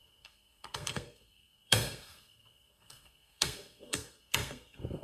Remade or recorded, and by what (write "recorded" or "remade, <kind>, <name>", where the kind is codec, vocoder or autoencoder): remade, codec, SNAC